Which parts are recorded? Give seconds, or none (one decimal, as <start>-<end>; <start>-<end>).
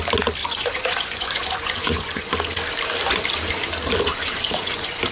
0.0-0.4; 2.3-4.1